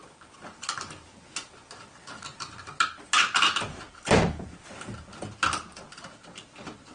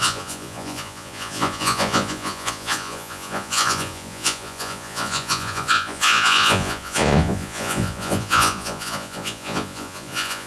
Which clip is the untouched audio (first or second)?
first